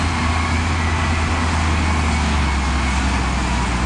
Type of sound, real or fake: real